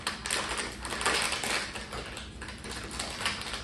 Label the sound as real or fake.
real